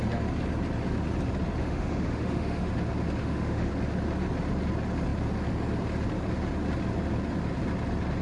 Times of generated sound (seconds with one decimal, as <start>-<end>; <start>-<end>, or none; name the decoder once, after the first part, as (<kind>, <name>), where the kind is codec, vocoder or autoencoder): 1.6-2.7 (autoencoder, DAC-VAE); 3.2-3.7